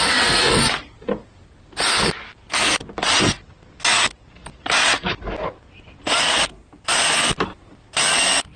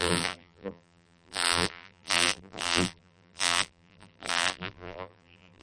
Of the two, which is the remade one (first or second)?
second